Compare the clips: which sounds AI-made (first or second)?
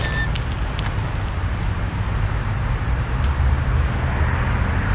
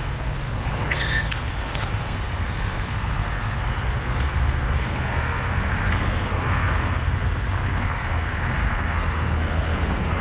second